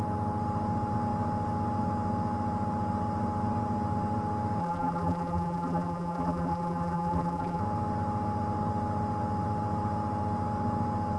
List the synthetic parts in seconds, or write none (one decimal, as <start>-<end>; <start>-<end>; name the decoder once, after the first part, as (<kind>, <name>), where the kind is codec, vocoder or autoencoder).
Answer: 4.6-7.6 (vocoder, BigVGAN v2)